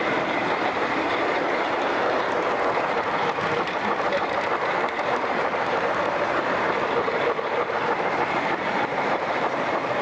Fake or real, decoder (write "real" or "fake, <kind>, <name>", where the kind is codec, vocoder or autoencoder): fake, vocoder, BigVGAN v2